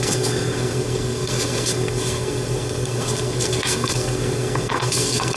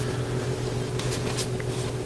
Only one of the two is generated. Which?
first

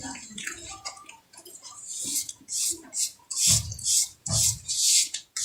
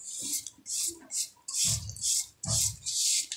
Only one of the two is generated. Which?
first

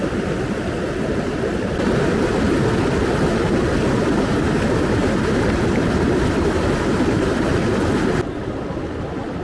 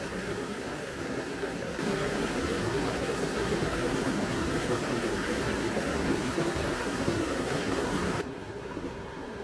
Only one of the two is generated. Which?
second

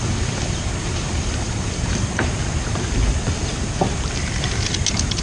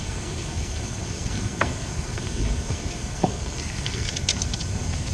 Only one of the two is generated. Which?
second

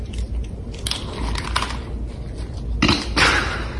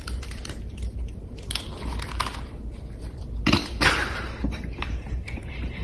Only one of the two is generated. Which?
second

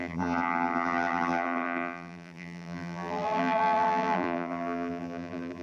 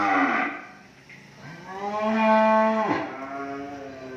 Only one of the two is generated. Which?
first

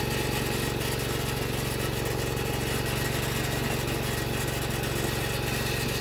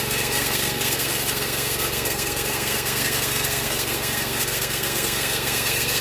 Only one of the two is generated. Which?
second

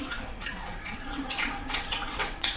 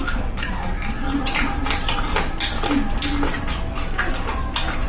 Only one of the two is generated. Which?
first